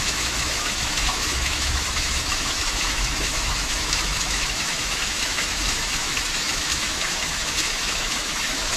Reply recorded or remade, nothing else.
remade